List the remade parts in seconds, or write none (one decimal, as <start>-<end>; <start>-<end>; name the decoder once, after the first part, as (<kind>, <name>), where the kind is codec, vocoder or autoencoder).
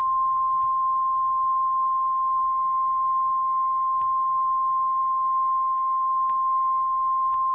0.0-7.5 (codec, SNAC)